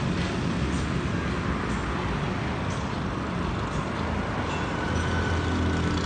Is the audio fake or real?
real